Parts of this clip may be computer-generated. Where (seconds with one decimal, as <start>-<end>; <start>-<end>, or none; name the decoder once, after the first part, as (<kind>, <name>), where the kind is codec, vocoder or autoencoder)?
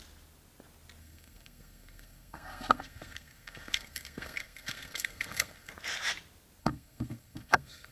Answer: 1.0-5.7 (codec, SNAC); 6.6-7.9